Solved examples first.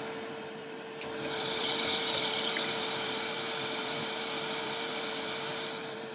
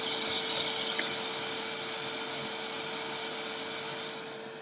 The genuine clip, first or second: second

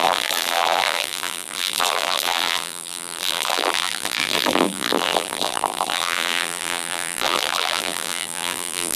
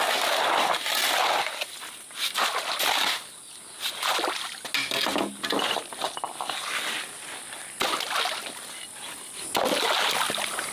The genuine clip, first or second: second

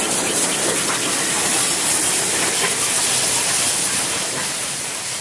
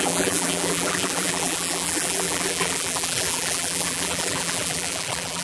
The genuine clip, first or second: first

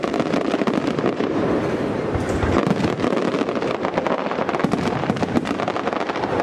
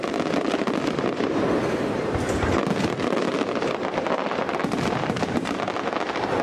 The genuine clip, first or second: second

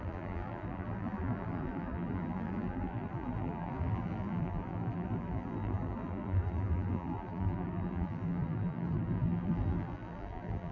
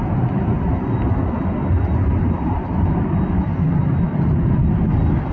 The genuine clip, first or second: second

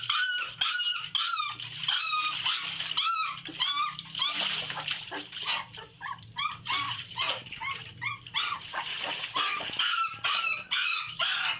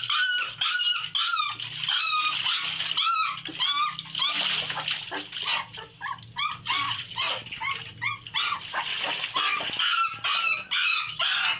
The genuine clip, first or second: second